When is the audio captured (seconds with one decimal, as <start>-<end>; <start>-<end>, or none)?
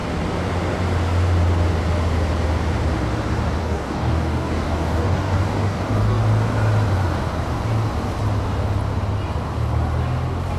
0.0-3.6; 6.2-10.6